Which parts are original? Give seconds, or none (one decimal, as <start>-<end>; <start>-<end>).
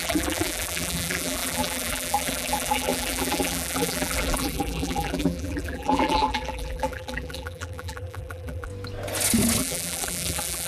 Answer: 8.7-9.6